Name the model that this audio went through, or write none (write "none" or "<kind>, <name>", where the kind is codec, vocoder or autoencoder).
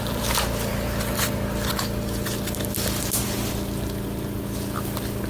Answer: none